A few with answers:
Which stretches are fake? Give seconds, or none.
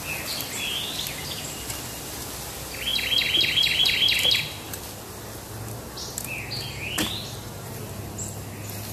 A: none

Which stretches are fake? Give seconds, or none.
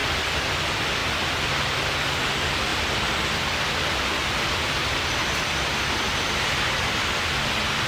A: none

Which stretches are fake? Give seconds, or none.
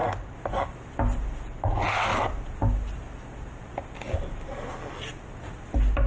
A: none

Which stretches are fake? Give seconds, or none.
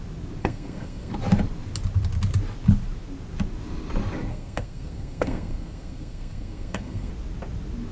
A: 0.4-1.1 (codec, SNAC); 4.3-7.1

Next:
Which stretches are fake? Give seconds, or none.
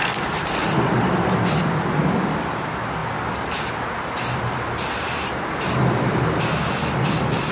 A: 0.0-3.0 (vocoder, BigVGAN v2); 5.9-7.5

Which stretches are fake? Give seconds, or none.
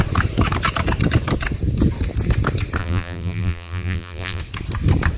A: 2.8-4.4 (vocoder, BigVGAN v2)